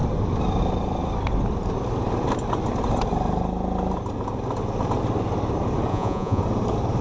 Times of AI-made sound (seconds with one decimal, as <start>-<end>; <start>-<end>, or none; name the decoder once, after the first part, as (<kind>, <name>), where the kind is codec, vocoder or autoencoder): 5.9-6.4 (vocoder, Vocos)